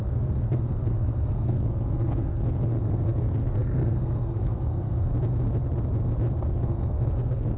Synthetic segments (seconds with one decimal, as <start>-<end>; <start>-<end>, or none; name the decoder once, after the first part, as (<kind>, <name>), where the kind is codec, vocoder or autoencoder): 0.0-5.1 (codec, SNAC); 6.5-7.6

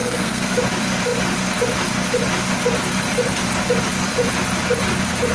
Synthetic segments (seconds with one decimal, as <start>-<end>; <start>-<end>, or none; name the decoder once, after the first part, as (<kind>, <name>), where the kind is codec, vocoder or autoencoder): 0.0-0.6 (codec, SNAC)

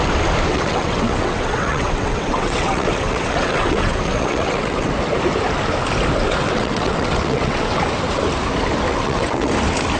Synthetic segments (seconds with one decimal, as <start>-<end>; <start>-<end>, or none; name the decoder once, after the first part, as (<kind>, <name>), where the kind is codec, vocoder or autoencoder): 0.5-4.9 (vocoder, WaveNeXt); 6.4-7.8; 8.9-9.5

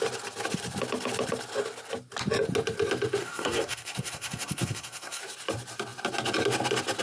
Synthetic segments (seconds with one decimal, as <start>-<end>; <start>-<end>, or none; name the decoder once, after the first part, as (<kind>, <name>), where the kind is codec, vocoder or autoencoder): 3.2-5.2 (codec, SNAC)

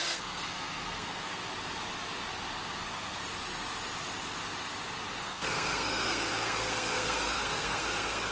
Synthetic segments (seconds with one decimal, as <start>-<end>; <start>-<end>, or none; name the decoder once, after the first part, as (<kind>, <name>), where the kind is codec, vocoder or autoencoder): 0.0-1.5 (codec, SNAC); 2.8-3.2; 5.2-8.3

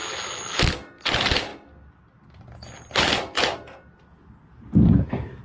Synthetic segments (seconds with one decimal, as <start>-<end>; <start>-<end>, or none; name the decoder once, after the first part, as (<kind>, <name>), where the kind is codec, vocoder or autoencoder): none

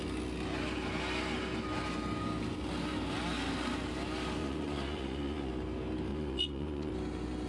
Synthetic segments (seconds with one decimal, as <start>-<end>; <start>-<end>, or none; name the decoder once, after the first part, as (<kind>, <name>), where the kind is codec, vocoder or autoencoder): 4.4-5.5 (vocoder, Vocos); 6.1-6.9